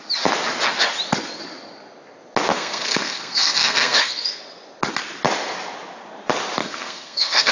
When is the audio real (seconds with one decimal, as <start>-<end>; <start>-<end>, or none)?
0.0-2.5; 4.4-6.6